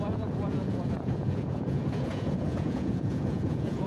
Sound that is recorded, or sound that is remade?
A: remade